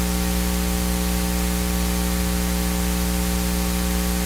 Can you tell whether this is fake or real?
real